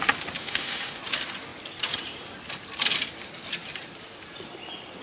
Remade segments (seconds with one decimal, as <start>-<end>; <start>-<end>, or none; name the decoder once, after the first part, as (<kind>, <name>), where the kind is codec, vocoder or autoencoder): 0.4-1.0 (autoencoder, DAC-VAE)